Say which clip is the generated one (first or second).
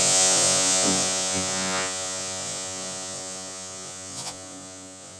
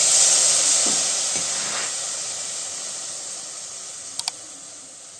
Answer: first